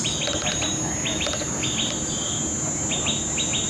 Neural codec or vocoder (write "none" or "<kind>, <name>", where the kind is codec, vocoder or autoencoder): none